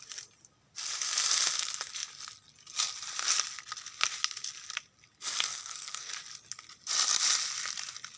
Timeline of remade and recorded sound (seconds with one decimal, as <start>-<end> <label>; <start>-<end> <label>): 0.0-5.5 recorded; 5.5-6.1 remade; 6.1-8.2 recorded